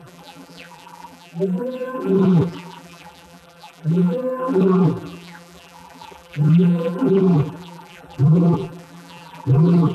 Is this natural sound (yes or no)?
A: no